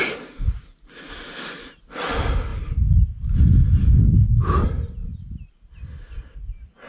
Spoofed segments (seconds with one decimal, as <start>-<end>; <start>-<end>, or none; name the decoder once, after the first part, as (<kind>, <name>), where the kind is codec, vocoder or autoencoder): 3.8-4.4 (codec, DAC)